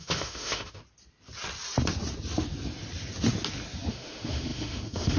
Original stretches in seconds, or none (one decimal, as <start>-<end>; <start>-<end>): 0.8-3.9